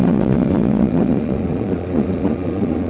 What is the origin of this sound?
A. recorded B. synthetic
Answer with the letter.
B